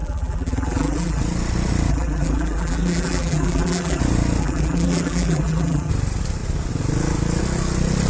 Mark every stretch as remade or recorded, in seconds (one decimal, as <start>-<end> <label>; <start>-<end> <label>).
0.0-1.2 remade; 1.2-1.9 recorded; 1.9-4.0 remade; 4.0-4.4 recorded; 4.4-5.9 remade; 5.9-8.1 recorded